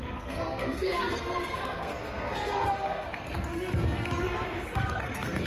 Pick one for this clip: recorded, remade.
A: remade